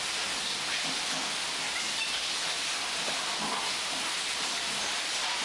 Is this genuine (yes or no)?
yes